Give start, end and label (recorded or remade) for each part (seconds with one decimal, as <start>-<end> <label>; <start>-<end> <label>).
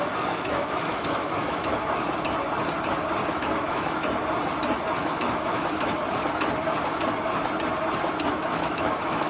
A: 0.0-1.7 remade; 1.7-3.3 recorded; 3.3-4.0 remade; 4.0-5.0 recorded; 5.0-5.9 remade; 5.9-8.3 recorded; 8.3-9.3 remade